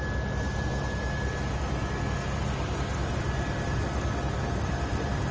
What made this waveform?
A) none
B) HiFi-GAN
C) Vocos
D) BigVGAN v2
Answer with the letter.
A